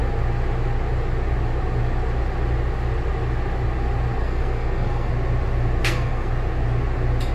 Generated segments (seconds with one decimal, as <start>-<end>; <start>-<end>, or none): 4.2-5.1; 5.8-6.3